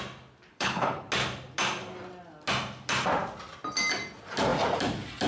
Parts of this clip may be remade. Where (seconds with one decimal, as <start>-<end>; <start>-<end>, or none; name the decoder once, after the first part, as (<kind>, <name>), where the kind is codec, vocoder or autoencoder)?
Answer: 0.5-1.1 (codec, HILCodec)